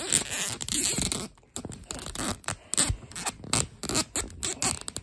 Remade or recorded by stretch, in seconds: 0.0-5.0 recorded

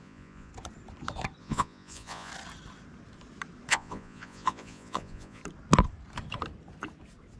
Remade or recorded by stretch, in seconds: 0.0-0.5 remade; 0.5-1.4 recorded; 1.4-2.3 remade; 2.3-3.7 recorded; 3.7-5.4 remade; 5.4-7.4 recorded

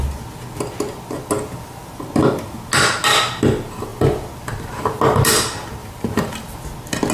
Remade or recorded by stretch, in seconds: 0.0-5.8 recorded; 5.8-6.6 remade; 6.6-7.1 recorded

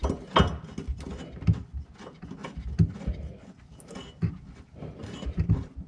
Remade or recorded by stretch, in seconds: 0.0-5.9 recorded

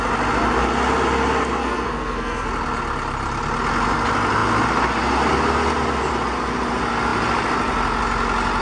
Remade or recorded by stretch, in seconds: 0.0-1.6 recorded; 1.6-2.5 remade; 2.5-8.6 recorded

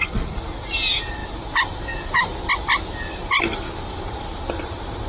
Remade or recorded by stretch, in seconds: 0.0-5.1 recorded